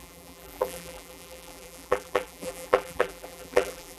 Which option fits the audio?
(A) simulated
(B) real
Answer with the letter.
A